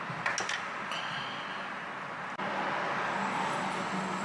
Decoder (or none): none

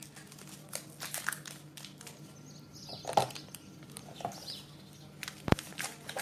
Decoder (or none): none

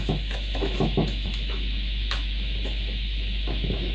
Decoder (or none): autoencoder, DAC-VAE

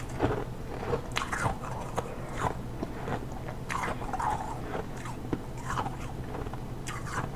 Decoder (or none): none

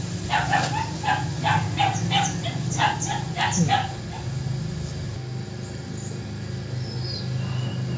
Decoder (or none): none